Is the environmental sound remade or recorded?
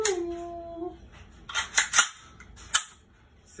recorded